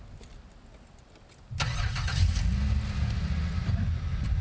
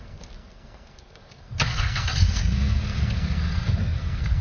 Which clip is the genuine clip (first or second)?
first